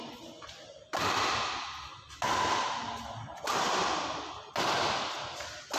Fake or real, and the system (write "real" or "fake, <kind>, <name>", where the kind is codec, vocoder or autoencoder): real